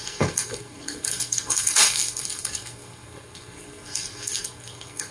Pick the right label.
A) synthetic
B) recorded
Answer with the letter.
A